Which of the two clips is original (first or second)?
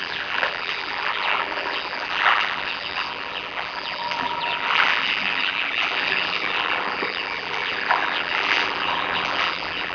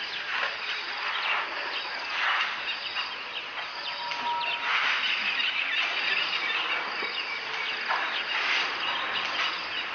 second